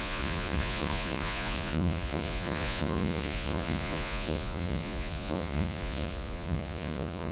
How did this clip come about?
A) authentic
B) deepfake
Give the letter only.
B